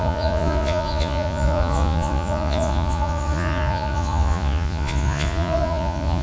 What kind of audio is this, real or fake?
fake